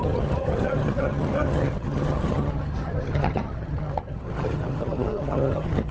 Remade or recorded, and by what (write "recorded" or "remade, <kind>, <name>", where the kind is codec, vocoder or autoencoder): remade, vocoder, HiFi-GAN